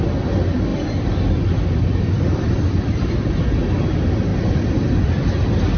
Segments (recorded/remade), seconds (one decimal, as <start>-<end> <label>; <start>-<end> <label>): 0.0-0.7 recorded; 0.7-3.3 remade; 3.3-4.3 recorded; 4.3-5.1 remade; 5.1-5.8 recorded